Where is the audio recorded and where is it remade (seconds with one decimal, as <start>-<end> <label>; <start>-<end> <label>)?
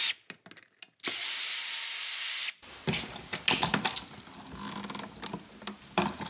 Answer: 0.0-6.3 recorded